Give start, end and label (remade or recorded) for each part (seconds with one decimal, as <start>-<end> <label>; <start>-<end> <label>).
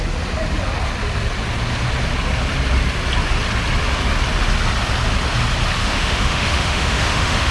0.0-5.8 recorded; 5.8-7.5 remade